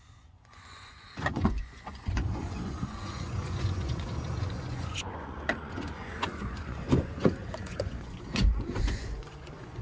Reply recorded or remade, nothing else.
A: remade